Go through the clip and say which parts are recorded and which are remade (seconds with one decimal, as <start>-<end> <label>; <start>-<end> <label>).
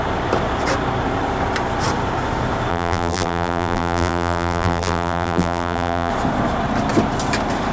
0.0-2.7 recorded; 2.7-6.1 remade; 6.1-7.7 recorded